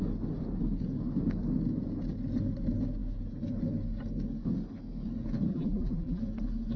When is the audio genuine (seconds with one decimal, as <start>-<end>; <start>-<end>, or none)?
0.0-5.5; 6.2-6.8